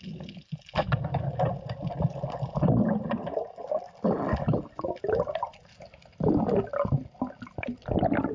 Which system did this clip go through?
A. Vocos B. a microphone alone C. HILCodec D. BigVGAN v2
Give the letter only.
B